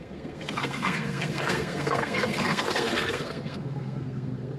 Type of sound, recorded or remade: remade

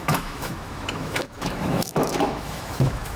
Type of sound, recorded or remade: remade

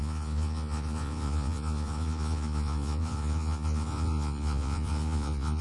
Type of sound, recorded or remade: remade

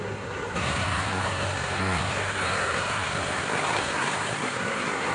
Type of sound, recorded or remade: remade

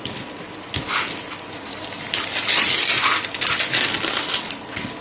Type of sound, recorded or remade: recorded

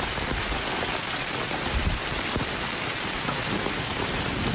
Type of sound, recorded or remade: recorded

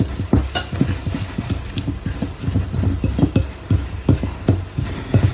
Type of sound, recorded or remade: recorded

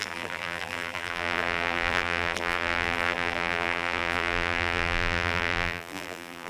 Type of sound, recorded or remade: remade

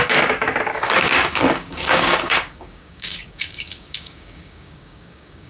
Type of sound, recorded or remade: remade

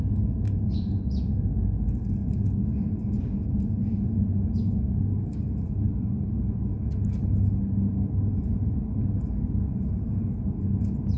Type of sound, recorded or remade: recorded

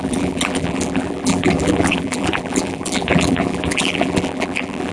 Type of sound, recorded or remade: remade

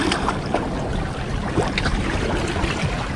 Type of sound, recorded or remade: recorded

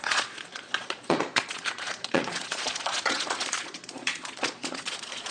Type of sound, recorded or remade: remade